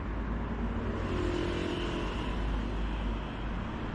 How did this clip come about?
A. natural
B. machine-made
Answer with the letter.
A